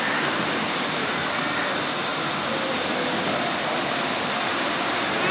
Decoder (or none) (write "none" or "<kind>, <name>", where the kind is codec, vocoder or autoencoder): none